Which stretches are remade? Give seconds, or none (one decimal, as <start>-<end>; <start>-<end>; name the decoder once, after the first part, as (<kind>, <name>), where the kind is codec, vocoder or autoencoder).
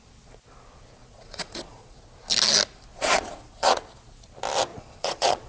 1.0-2.0 (vocoder, Vocos); 2.9-4.2; 4.7-5.5